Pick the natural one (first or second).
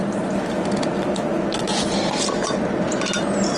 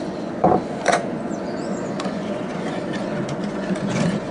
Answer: first